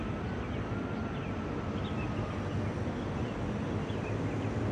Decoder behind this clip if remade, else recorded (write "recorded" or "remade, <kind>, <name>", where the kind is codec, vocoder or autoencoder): recorded